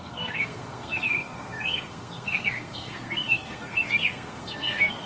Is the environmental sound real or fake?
fake